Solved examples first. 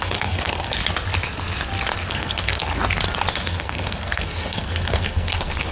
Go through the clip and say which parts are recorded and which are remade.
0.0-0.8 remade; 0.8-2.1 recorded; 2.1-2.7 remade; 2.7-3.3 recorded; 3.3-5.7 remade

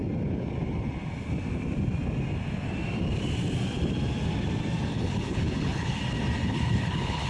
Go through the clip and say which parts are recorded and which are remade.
0.0-4.9 recorded; 4.9-6.0 remade; 6.0-6.4 recorded; 6.4-7.3 remade

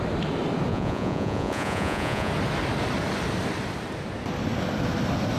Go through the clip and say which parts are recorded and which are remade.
0.0-0.7 recorded; 0.7-2.3 remade; 2.3-5.4 recorded

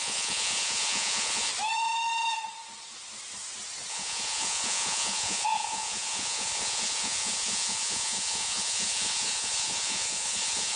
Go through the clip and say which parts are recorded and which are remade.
0.0-1.5 remade; 1.5-3.9 recorded; 3.9-10.8 remade

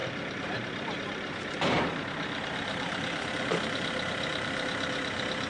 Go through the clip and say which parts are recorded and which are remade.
0.0-5.5 remade

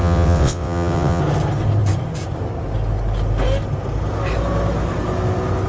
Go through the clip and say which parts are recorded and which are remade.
0.0-1.2 remade; 1.2-5.7 recorded